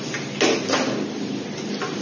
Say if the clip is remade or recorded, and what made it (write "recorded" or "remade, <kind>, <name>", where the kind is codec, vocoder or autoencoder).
recorded